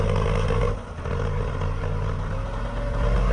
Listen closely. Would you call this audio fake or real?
real